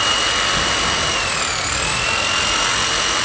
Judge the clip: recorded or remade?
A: recorded